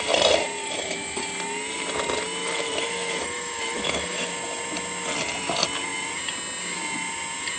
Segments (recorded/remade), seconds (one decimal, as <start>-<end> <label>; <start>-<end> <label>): 0.0-0.6 recorded; 0.6-1.2 remade; 1.2-2.4 recorded; 2.4-4.3 remade; 4.3-7.6 recorded